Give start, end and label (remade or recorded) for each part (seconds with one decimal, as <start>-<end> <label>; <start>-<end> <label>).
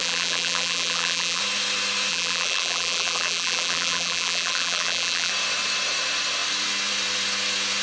0.0-1.4 remade; 1.4-2.1 recorded; 2.1-5.3 remade; 5.3-7.8 recorded